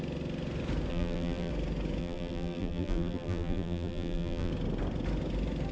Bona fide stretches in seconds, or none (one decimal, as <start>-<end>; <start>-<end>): 0.0-0.9; 1.5-2.0; 4.5-5.7